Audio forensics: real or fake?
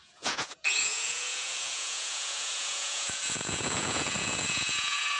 fake